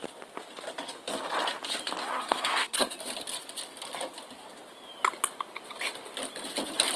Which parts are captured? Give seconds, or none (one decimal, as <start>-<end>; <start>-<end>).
0.0-2.0; 3.0-7.0